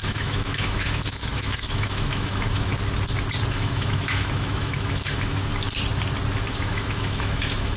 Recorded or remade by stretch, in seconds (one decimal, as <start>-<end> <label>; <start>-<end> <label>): 0.0-2.7 remade; 2.7-3.5 recorded; 3.5-5.5 remade; 5.5-6.5 recorded; 6.5-7.8 remade

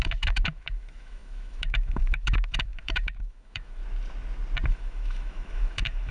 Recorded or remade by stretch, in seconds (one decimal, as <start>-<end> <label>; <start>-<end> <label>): 0.0-3.8 remade; 3.8-4.7 recorded; 4.7-6.1 remade